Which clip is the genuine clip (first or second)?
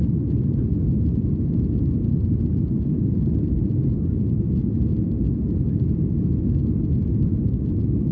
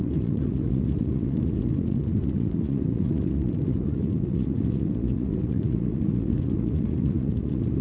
first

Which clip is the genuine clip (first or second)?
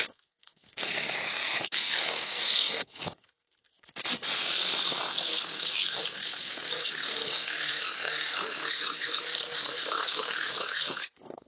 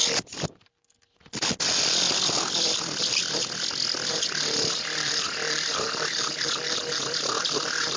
second